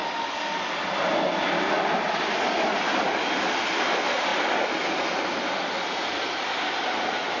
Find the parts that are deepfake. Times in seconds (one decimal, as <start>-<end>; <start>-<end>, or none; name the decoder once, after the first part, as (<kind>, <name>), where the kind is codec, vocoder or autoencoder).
none